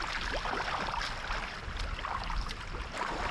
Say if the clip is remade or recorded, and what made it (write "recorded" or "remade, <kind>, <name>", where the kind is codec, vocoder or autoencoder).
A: recorded